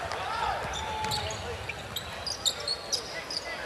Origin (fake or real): real